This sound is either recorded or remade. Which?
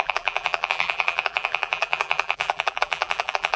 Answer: remade